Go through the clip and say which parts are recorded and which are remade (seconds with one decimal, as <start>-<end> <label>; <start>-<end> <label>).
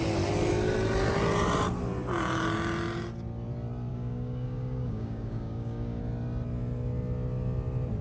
0.0-3.9 recorded; 3.9-6.0 remade; 6.0-8.0 recorded